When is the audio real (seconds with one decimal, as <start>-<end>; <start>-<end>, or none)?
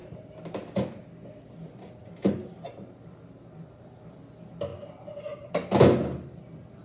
0.0-2.0; 4.2-4.7; 5.5-6.8